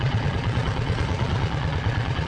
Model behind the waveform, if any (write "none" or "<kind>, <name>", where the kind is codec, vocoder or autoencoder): vocoder, Vocos